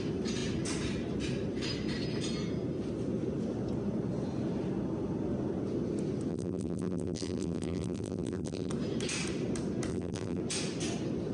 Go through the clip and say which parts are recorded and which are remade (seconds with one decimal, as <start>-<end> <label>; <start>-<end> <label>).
0.0-6.3 recorded; 6.3-8.7 remade; 8.7-9.9 recorded; 9.9-10.4 remade; 10.4-11.3 recorded